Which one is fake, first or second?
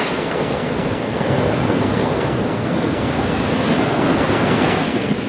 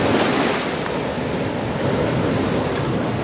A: first